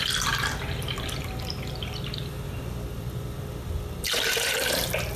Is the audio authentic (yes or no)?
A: no